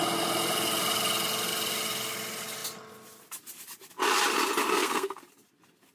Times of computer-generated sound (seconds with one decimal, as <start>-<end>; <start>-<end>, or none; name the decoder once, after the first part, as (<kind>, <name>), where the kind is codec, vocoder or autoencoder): 4.7-5.2 (codec, SNAC)